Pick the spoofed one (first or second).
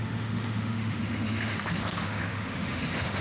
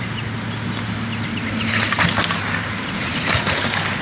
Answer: first